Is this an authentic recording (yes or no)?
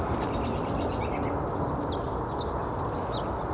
yes